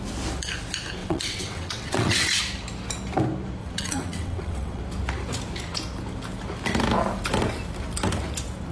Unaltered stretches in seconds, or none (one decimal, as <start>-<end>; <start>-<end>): 0.0-1.0; 2.4-3.6; 4.8-8.7